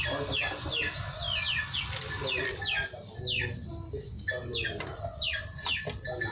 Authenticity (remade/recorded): recorded